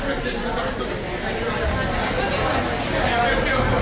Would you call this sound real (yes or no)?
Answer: yes